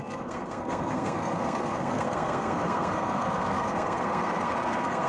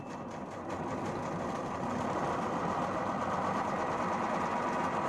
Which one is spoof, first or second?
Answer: first